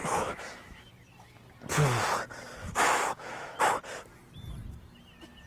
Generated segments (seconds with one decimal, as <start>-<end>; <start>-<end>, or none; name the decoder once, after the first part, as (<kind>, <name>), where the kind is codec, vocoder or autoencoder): 0.0-0.9 (autoencoder, DAC-VAE); 2.6-3.6